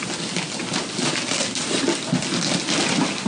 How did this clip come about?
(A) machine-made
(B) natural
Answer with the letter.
B